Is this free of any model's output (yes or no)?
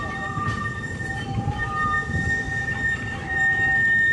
no